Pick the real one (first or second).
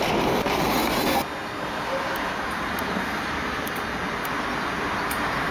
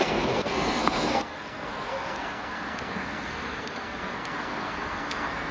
first